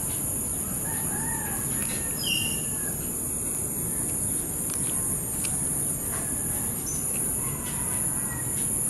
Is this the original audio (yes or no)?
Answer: yes